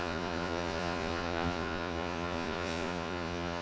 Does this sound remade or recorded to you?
remade